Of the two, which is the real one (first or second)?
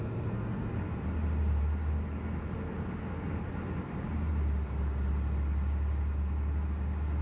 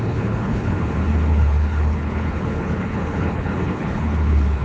first